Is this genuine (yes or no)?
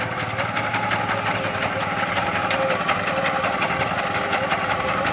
yes